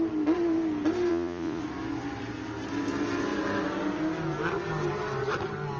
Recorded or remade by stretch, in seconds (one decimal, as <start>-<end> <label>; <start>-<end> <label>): 0.0-1.1 recorded; 1.1-1.6 remade; 1.6-5.8 recorded